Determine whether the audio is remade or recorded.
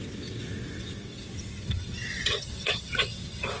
remade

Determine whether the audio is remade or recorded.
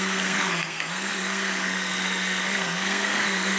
remade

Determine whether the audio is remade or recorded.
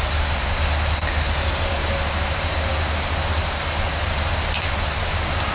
recorded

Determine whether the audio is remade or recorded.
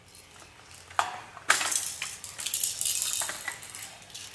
recorded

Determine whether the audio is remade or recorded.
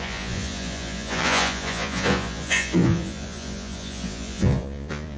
remade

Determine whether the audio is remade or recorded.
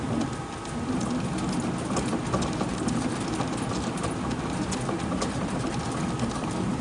recorded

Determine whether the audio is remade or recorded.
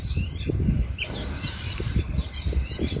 remade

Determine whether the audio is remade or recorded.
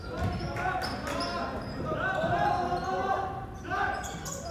recorded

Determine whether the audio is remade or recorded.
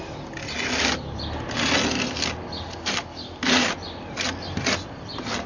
recorded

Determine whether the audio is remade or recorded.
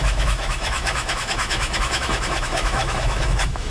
remade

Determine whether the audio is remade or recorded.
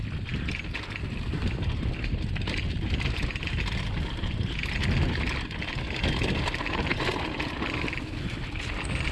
recorded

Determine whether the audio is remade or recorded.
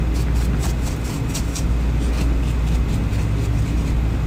recorded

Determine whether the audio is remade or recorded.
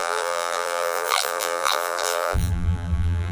remade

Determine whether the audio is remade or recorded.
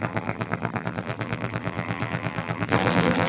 remade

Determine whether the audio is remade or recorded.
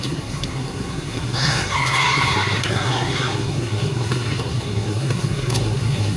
remade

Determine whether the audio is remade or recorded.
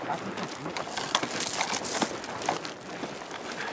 recorded